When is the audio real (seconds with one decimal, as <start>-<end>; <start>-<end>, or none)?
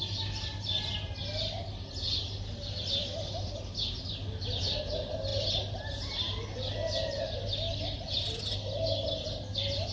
0.0-9.9